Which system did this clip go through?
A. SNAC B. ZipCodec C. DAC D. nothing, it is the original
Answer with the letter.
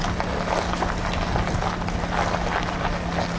D